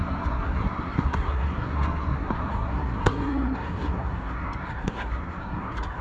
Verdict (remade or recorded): remade